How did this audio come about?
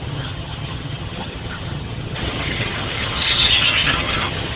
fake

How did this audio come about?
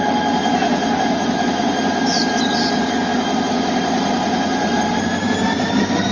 fake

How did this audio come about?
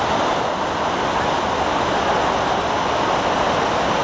real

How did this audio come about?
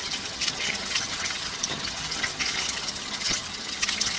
fake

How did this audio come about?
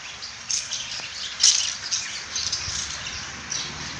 real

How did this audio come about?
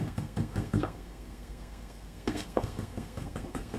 fake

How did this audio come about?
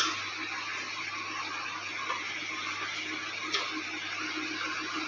real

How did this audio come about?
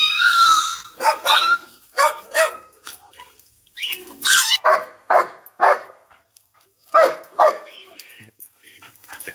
fake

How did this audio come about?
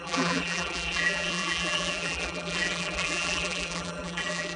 fake